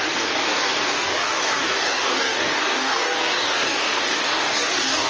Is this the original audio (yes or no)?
no